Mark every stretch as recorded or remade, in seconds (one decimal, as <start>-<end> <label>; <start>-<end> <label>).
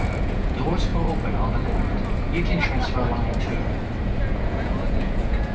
0.0-0.9 remade; 0.9-4.2 recorded; 4.2-5.5 remade